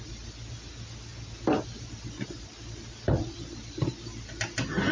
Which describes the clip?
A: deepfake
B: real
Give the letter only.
B